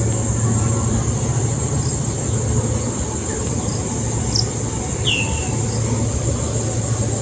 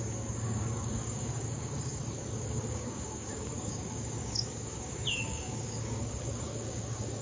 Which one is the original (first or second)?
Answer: first